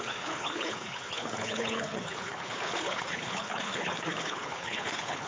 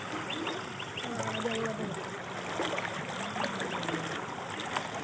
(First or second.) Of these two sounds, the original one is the second